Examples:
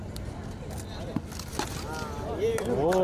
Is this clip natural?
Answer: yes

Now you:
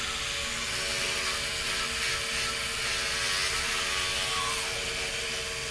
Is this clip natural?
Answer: yes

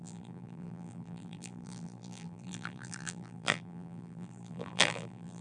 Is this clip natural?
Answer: no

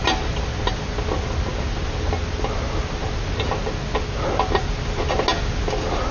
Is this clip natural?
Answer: yes